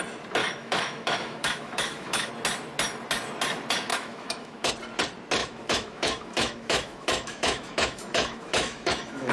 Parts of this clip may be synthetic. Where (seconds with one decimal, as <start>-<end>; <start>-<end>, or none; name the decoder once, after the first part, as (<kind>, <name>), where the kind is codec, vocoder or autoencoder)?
0.4-2.3 (autoencoder, DAC-VAE); 3.9-4.7; 5.4-9.3